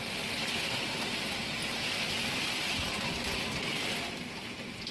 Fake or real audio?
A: real